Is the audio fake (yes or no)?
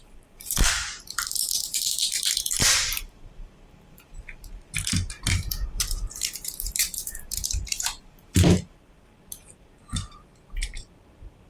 yes